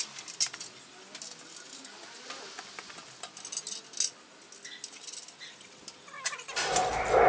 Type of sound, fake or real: real